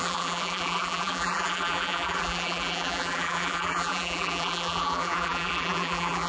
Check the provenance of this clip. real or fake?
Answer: fake